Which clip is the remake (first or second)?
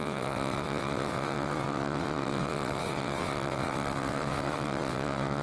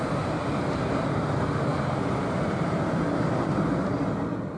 first